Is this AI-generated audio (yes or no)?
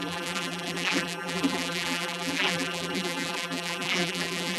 yes